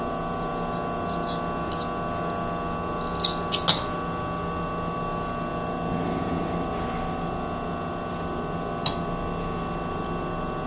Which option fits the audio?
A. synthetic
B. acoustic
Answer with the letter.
B